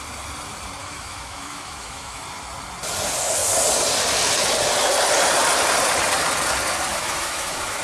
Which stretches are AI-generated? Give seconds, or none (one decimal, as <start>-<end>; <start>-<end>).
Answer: 0.8-2.2; 6.9-7.8